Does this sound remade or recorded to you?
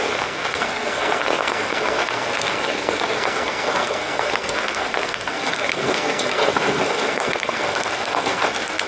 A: remade